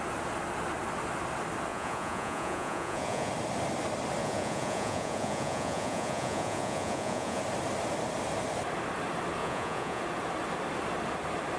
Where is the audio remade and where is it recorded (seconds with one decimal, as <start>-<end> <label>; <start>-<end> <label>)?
0.0-1.7 recorded; 1.7-3.3 remade; 3.3-4.2 recorded; 4.2-7.4 remade; 7.4-9.4 recorded; 9.4-10.0 remade; 10.0-11.6 recorded